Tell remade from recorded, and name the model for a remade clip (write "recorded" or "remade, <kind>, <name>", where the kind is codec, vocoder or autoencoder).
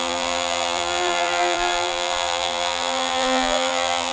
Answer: remade, vocoder, BigVGAN v2